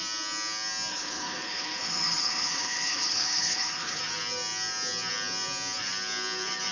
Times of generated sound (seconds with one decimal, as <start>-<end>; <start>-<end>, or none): 0.9-4.0